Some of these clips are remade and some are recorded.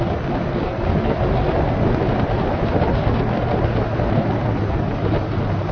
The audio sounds recorded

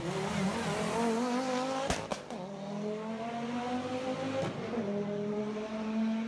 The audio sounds recorded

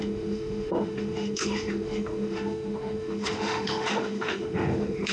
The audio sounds remade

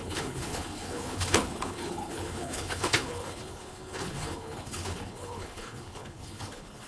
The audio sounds remade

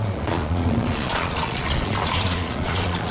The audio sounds remade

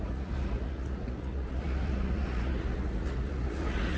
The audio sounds remade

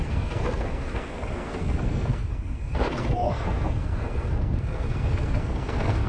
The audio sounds remade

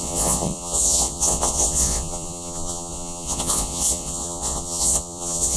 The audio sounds remade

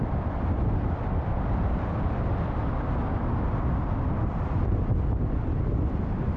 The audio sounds remade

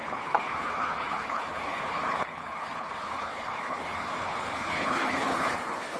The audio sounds remade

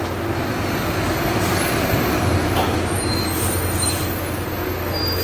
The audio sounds recorded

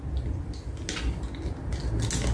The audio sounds recorded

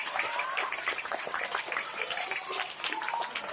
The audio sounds remade